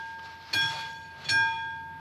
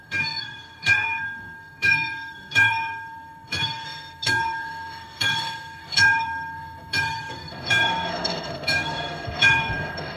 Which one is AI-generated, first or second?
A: second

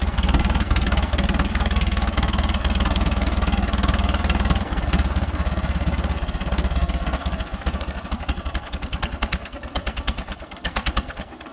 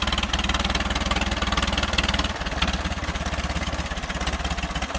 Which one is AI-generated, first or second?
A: first